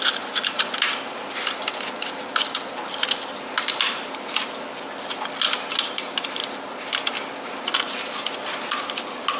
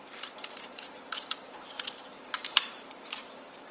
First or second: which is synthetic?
second